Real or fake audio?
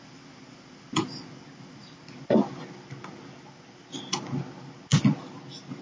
real